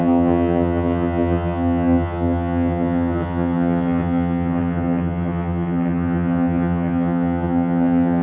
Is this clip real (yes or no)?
no